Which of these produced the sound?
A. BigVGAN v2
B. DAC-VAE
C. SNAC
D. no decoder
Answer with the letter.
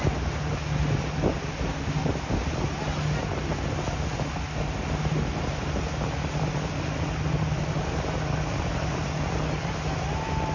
D